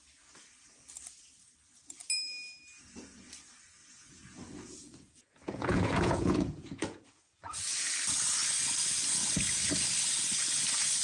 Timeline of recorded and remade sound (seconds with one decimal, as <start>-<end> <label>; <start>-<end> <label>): 0.0-3.8 recorded; 3.8-7.9 remade; 7.9-11.0 recorded